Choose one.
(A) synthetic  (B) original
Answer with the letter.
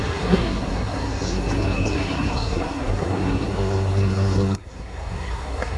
A